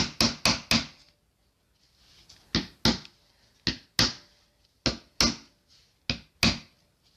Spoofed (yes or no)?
no